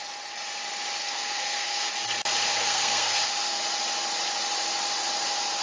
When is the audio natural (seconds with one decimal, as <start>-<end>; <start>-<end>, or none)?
0.0-1.0; 1.9-2.6; 3.6-5.6